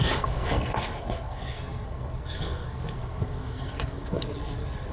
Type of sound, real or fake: fake